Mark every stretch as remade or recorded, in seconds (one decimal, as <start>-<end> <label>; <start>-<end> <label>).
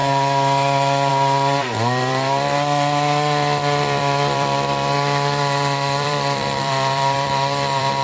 0.0-8.0 remade